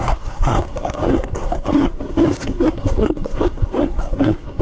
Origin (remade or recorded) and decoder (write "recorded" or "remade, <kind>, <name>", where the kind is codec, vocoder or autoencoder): remade, codec, SNAC